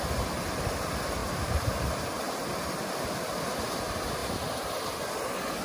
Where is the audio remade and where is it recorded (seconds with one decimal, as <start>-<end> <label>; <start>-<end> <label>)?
0.0-1.2 recorded; 1.2-3.6 remade; 3.6-5.6 recorded